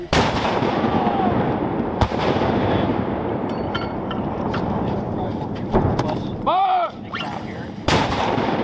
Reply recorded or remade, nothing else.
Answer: remade